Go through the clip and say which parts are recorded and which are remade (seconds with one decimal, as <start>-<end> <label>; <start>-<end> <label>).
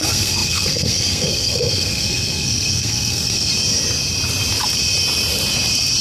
0.0-3.5 remade; 3.5-6.0 recorded